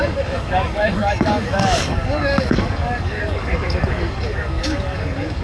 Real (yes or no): no